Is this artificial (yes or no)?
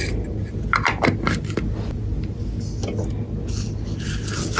no